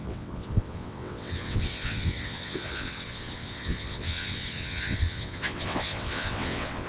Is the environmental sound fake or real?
fake